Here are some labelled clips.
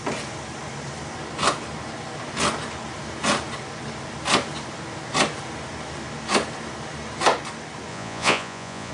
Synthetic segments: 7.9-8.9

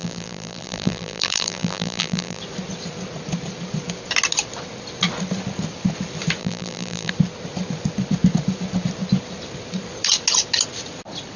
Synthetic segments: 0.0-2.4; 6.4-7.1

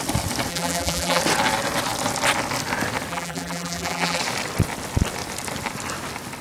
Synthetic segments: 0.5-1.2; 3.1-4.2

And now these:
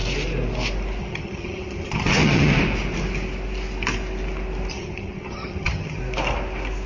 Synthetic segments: 1.0-2.5; 4.7-6.0

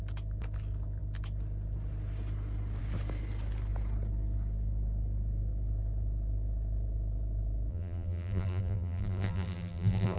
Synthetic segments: 7.7-10.2